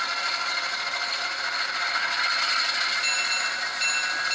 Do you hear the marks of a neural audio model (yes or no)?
no